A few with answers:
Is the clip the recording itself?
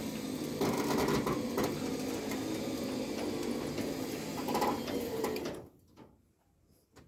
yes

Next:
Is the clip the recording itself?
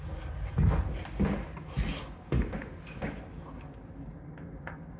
yes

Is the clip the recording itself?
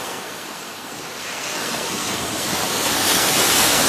no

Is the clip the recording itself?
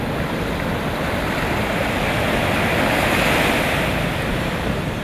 yes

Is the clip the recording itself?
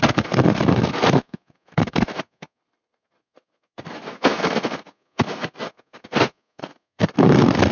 no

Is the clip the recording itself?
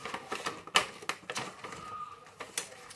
yes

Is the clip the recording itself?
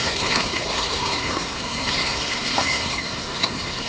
no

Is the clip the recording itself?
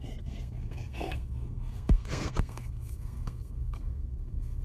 no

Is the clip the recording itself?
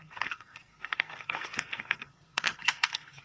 no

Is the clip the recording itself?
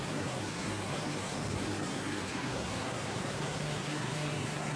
no